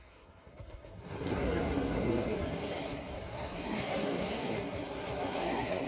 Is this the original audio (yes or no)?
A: no